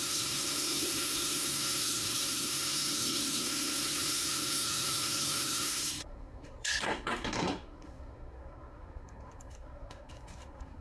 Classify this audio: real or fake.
fake